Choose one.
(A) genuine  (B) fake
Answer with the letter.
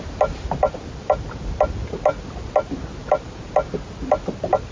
A